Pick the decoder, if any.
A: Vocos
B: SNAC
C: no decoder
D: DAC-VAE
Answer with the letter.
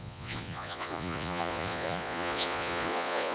A